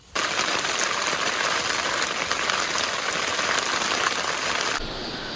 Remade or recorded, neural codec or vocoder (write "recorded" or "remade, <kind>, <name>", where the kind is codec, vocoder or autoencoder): recorded